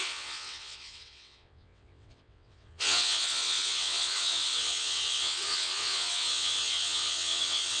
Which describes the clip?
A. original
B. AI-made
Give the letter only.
B